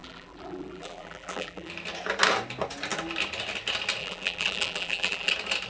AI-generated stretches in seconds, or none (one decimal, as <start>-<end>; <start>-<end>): 0.0-1.7; 4.0-5.3